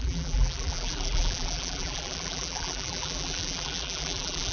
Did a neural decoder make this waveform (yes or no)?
yes